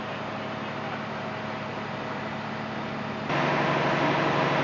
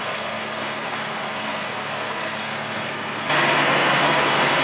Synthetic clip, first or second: second